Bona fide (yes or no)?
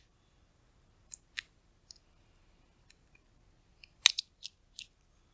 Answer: yes